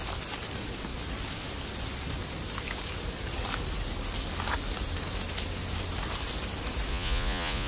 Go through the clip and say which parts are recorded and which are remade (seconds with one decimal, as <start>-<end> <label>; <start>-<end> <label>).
0.0-6.9 recorded; 6.9-7.7 remade

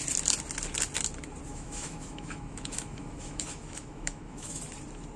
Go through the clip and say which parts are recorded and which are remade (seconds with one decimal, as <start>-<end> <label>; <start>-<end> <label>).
0.0-1.5 recorded; 1.5-4.6 remade; 4.6-5.2 recorded

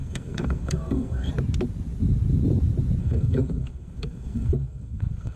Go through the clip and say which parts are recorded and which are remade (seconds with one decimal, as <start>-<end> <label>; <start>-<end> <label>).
0.0-1.3 remade; 1.3-3.0 recorded; 3.0-5.4 remade

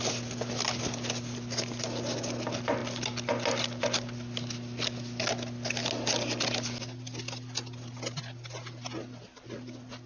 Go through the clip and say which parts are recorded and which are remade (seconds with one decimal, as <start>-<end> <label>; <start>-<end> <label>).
0.0-10.1 recorded

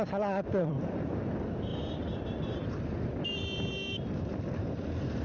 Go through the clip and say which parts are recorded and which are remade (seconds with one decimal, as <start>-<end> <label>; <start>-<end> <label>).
0.0-0.6 recorded; 0.6-1.2 remade; 1.2-1.7 recorded; 1.7-4.8 remade; 4.8-5.2 recorded

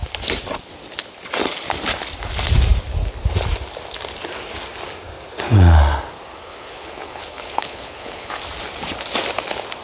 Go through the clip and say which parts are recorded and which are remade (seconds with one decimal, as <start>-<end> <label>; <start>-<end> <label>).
0.0-6.3 recorded; 6.3-8.4 remade; 8.4-9.8 recorded